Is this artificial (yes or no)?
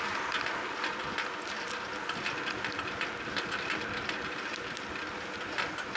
no